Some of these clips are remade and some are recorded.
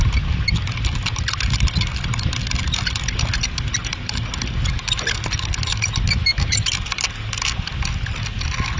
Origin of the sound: recorded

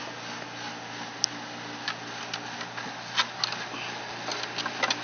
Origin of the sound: recorded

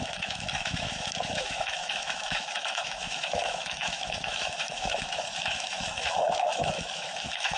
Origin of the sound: remade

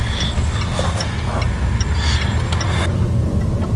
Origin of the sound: recorded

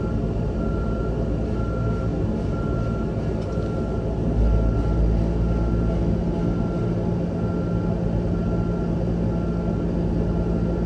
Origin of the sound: recorded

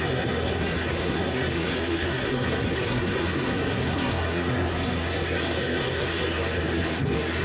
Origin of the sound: remade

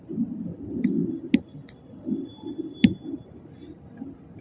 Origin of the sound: recorded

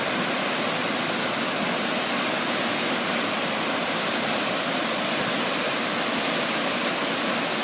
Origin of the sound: recorded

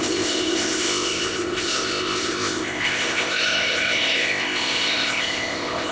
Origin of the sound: remade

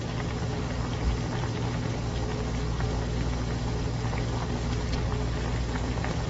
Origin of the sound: recorded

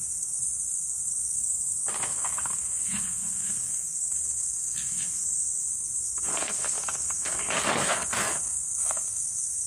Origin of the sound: remade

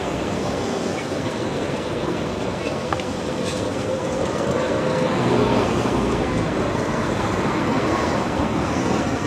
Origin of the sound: remade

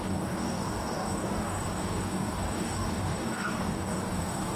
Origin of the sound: remade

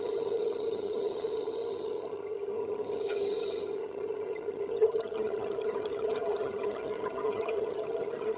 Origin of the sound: remade